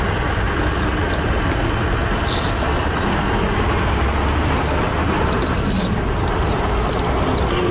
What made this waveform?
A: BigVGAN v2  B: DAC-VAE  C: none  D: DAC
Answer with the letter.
C